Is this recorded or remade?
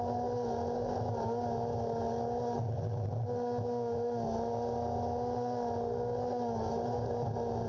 recorded